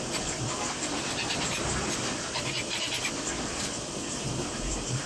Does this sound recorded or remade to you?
remade